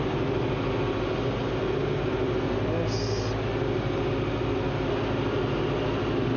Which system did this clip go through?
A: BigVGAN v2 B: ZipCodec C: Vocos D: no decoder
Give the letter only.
D